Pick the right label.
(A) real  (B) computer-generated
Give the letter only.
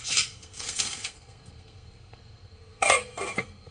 B